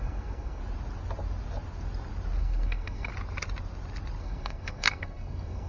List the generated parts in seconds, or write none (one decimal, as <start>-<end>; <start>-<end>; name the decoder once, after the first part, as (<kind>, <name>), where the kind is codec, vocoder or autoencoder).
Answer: 0.0-0.6 (codec, SNAC); 2.4-3.1; 4.2-5.7

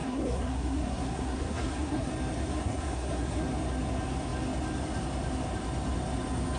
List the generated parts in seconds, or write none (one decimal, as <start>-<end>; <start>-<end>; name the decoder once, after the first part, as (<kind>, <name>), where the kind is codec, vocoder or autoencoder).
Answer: 0.0-2.1 (codec, SNAC); 2.5-3.4

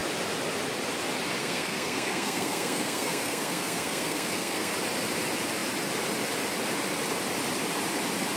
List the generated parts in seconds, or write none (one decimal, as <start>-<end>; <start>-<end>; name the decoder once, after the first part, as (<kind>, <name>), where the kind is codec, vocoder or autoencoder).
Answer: 1.4-4.7 (codec, SNAC)

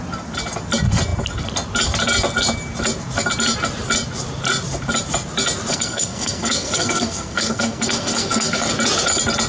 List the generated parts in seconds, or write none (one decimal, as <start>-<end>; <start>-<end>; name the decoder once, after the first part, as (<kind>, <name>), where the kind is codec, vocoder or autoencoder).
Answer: 5.7-8.7 (codec, SNAC)

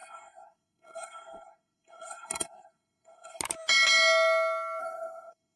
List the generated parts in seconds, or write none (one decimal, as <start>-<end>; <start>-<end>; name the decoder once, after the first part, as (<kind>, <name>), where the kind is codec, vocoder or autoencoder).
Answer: 0.0-3.4 (codec, SNAC); 4.8-5.6

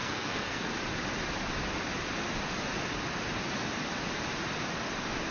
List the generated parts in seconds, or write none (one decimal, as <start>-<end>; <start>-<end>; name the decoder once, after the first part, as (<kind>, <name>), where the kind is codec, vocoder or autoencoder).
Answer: 0.0-0.7 (codec, SNAC)

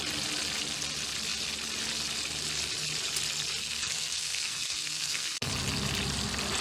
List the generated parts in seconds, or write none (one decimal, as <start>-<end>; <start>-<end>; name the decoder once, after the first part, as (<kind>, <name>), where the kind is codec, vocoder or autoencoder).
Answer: 3.6-5.5 (codec, SNAC)